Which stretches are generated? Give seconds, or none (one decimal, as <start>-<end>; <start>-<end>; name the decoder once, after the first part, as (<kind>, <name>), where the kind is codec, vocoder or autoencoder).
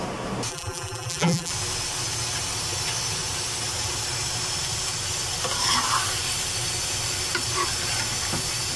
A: 0.5-1.5 (vocoder, BigVGAN v2)